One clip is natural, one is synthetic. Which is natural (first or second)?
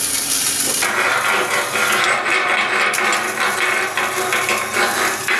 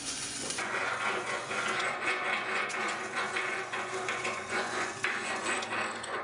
first